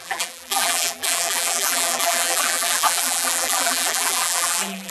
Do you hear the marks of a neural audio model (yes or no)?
yes